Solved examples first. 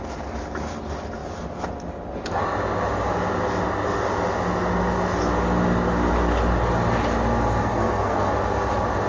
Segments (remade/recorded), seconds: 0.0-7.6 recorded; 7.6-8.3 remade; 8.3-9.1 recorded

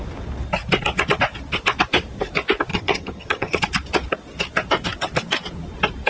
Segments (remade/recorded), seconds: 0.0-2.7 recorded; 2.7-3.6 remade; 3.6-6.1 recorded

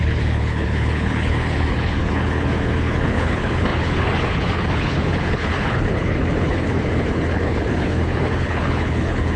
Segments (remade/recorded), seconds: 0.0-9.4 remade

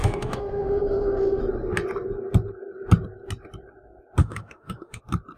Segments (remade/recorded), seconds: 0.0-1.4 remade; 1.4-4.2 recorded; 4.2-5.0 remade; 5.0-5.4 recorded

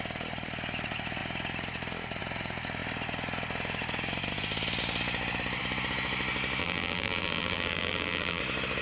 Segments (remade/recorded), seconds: 0.0-6.6 recorded; 6.6-8.4 remade; 8.4-8.8 recorded